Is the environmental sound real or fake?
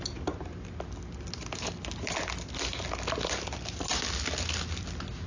real